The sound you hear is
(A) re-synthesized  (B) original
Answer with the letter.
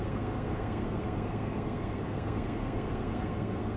A